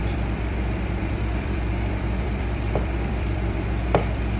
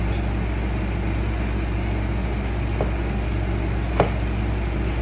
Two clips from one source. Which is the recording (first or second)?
second